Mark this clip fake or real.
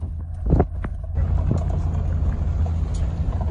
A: real